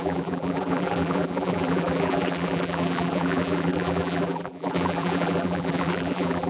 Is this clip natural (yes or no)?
no